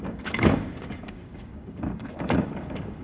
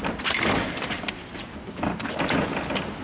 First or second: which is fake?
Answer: first